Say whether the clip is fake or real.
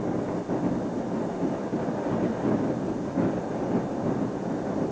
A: real